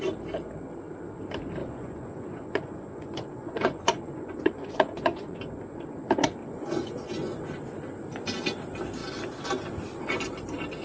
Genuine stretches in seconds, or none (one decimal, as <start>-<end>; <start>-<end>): 0.0-1.6; 5.4-6.4; 7.4-10.8